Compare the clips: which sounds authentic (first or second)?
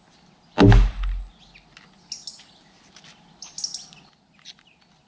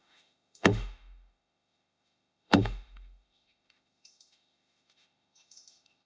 first